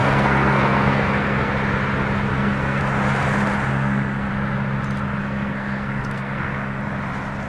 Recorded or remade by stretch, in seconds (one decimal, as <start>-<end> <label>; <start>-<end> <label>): 0.0-1.5 remade; 1.5-2.3 recorded; 2.3-2.8 remade; 2.8-3.7 recorded; 3.7-4.3 remade; 4.3-5.2 recorded; 5.2-6.8 remade; 6.8-7.5 recorded